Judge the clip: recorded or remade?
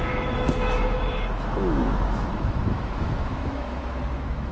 remade